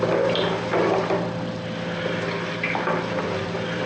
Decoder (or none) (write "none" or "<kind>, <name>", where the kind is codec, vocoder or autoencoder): none